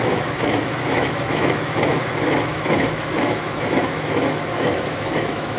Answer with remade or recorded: remade